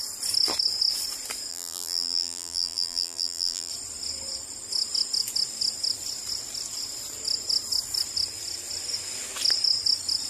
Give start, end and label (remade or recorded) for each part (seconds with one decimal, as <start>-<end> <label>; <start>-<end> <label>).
0.0-1.5 recorded; 1.5-3.7 remade; 3.7-10.3 recorded